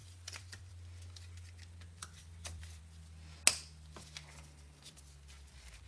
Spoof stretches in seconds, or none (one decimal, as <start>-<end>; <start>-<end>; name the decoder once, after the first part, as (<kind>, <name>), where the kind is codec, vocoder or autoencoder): 0.0-0.7 (vocoder, BigVGAN v2); 2.0-2.8; 4.4-5.0